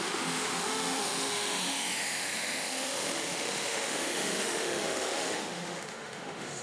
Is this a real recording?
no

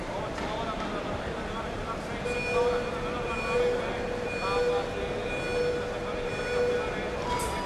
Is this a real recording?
yes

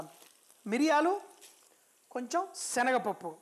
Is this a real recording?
yes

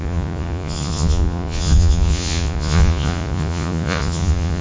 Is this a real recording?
no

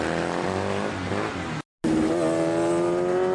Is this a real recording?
yes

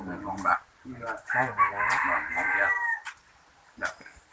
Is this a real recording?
yes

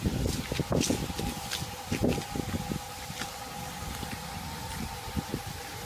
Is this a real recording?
yes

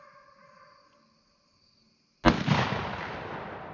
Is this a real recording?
yes